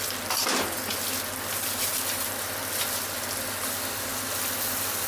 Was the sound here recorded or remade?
recorded